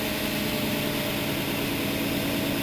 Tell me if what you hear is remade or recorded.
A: recorded